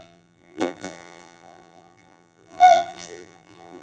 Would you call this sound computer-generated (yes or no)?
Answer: yes